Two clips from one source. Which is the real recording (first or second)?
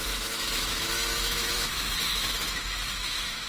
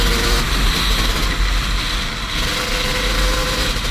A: second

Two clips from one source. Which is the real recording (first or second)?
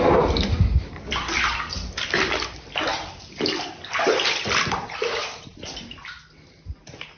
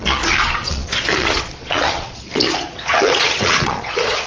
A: first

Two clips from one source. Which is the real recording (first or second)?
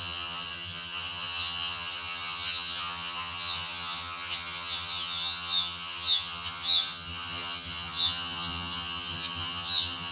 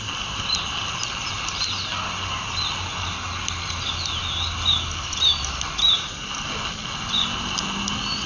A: second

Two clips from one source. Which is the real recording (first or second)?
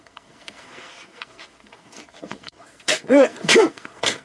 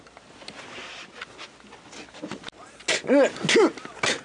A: second